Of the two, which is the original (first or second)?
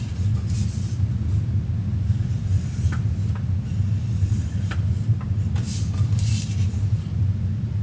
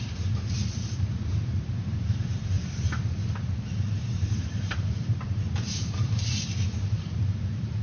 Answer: first